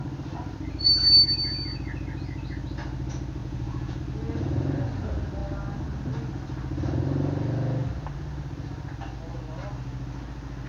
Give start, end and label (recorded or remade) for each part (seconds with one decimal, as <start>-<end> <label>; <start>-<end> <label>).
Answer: 0.0-3.4 recorded; 3.4-4.0 remade; 4.0-10.7 recorded